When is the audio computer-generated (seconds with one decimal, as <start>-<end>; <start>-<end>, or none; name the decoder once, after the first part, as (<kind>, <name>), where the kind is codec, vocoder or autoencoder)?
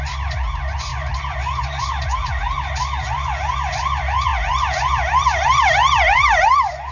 none